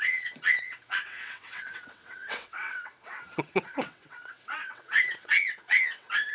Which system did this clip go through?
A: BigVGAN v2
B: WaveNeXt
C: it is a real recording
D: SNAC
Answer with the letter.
B